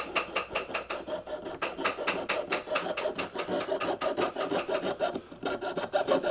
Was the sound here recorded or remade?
recorded